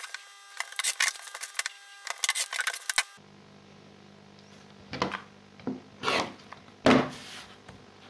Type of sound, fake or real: real